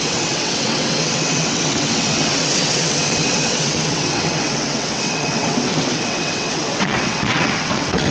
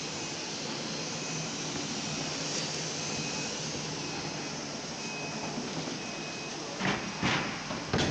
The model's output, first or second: first